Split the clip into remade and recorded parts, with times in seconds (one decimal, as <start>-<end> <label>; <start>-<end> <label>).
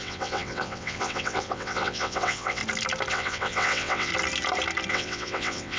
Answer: 0.0-2.6 remade; 2.6-3.1 recorded; 3.1-4.1 remade; 4.1-4.9 recorded; 4.9-5.8 remade